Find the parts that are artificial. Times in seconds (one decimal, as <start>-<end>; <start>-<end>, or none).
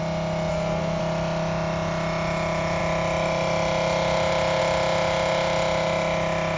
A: 0.5-1.0